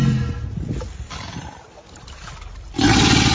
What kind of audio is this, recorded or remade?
recorded